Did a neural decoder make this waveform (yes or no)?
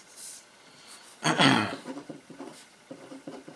yes